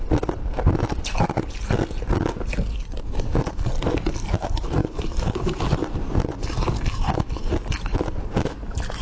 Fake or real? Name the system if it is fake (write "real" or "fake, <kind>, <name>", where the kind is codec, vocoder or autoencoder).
real